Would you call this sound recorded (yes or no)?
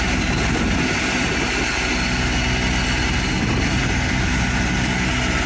yes